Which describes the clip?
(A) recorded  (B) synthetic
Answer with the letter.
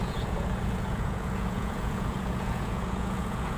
B